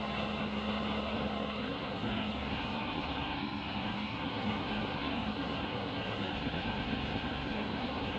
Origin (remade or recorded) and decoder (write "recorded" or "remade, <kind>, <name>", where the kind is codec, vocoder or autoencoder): remade, codec, SNAC